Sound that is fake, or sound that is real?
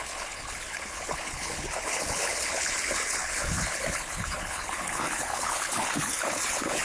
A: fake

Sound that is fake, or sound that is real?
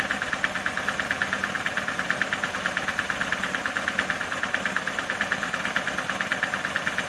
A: real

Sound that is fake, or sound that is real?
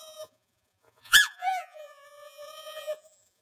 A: fake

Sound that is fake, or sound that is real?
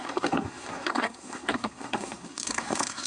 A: fake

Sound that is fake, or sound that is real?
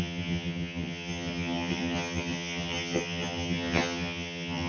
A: fake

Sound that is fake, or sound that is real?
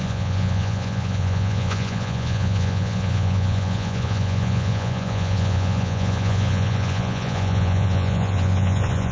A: fake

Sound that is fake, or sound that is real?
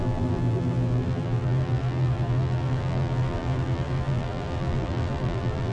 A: fake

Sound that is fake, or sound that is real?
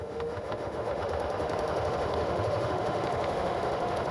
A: fake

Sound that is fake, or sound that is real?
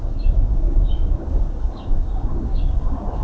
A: fake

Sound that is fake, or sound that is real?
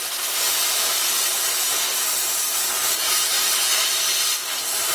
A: fake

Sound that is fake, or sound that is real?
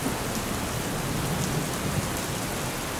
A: real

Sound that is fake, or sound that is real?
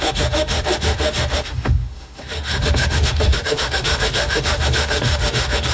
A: fake